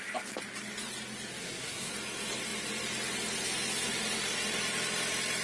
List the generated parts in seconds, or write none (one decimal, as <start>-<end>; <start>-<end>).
1.4-1.9